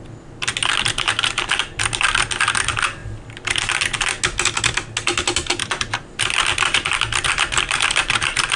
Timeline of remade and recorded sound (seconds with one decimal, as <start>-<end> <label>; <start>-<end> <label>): 0.0-0.6 recorded; 0.6-2.0 remade; 2.0-5.6 recorded; 5.6-8.6 remade